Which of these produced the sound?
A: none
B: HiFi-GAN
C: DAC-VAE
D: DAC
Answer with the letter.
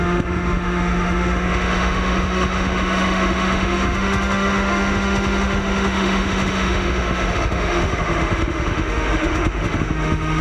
C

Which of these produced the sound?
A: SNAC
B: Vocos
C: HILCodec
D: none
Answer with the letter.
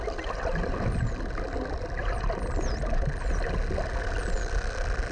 D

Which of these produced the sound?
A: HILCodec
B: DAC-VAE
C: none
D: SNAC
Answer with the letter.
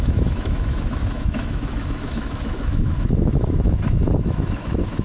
B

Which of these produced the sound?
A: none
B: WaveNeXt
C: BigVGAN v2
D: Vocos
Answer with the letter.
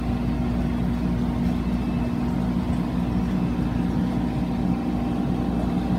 A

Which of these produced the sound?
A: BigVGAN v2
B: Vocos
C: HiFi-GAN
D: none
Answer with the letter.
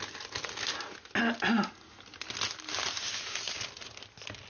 D